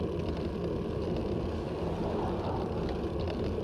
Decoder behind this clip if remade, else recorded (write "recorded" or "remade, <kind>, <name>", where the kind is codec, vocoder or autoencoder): recorded